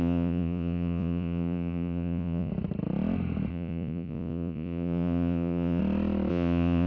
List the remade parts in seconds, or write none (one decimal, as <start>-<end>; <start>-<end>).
0.0-2.5; 3.5-5.8; 6.3-6.9